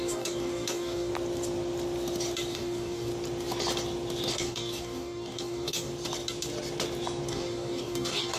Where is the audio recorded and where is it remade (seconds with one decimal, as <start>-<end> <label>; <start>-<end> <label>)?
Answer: 0.0-1.1 remade; 1.1-2.5 recorded; 2.5-3.1 remade; 3.1-4.3 recorded; 4.3-5.9 remade; 5.9-7.3 recorded; 7.3-8.4 remade